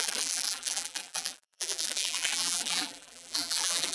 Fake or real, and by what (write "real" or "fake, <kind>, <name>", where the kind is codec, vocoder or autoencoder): fake, vocoder, BigVGAN v2